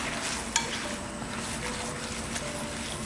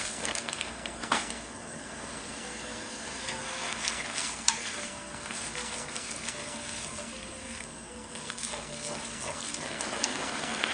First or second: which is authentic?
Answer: first